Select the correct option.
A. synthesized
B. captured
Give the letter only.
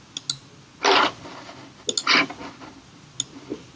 B